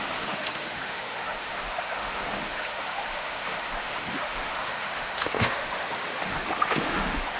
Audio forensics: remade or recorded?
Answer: remade